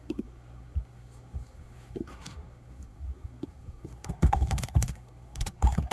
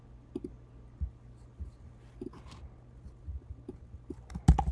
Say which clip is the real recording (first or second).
second